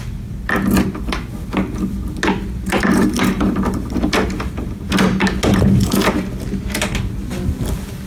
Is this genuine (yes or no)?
yes